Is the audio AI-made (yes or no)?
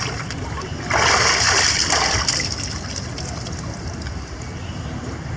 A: no